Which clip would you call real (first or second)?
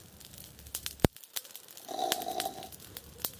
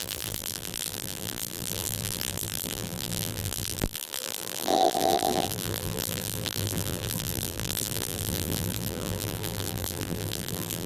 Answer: first